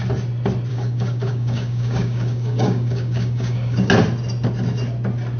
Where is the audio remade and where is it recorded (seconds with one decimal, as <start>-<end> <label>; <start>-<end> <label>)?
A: 0.0-0.7 recorded; 0.7-3.9 remade; 3.9-5.4 recorded